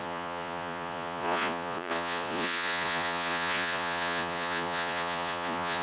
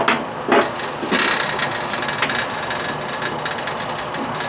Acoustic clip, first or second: second